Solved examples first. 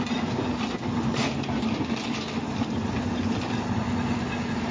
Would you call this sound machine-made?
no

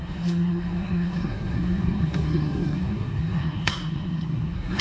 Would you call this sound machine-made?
yes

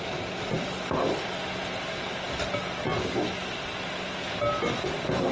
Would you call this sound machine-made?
no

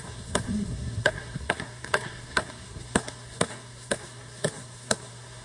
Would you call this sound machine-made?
yes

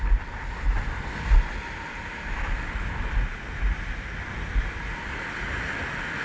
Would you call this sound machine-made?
no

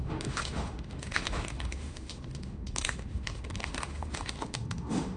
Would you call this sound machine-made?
yes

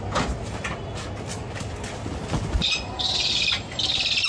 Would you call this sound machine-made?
no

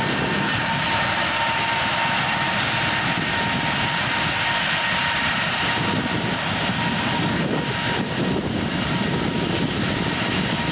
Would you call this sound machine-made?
no